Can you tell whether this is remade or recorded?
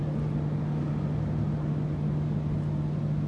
recorded